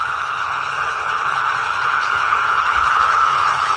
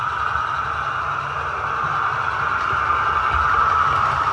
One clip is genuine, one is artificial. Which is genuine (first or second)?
second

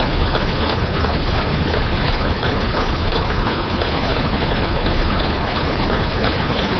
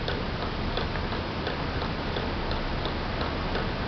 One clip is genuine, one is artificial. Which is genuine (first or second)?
second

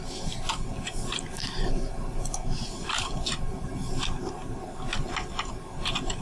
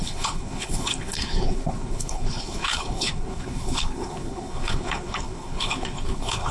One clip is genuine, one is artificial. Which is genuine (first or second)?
first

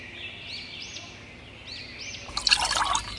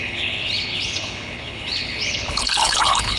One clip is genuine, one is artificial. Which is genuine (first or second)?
first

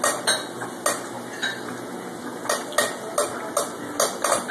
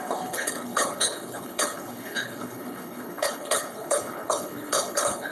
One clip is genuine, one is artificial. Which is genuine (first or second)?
first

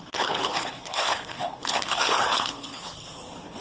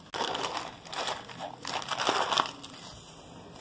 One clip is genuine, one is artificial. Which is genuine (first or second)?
second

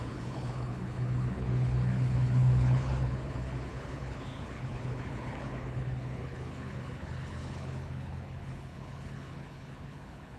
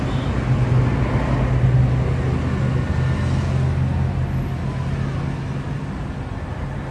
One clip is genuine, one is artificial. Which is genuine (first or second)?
second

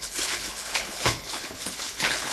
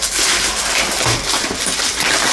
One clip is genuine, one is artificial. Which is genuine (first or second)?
second